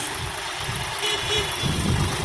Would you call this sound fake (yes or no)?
yes